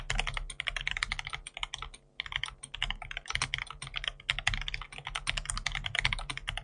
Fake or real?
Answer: real